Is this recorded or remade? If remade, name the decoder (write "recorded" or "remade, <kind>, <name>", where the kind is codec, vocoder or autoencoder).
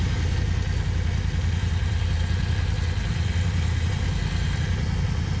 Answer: recorded